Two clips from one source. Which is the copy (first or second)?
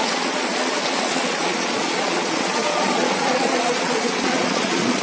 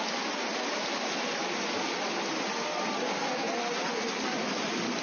first